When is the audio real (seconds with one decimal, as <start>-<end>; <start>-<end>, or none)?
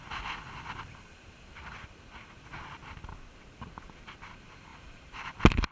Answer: 0.0-4.7; 5.3-5.7